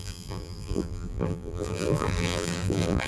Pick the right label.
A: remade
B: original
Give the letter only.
A